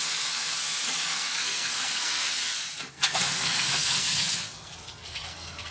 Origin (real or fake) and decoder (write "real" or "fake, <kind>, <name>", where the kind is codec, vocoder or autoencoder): fake, codec, SNAC